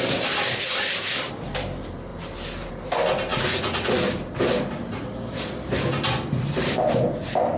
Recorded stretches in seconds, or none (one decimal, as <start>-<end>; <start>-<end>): 0.0-3.3; 3.9-7.6